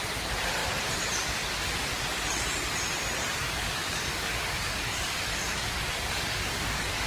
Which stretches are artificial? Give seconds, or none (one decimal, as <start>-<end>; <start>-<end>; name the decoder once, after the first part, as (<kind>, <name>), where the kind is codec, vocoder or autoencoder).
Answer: 3.4-7.1 (codec, DAC)